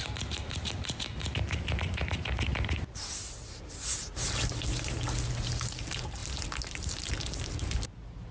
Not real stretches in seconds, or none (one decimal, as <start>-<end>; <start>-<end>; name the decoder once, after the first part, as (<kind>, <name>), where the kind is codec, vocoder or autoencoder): none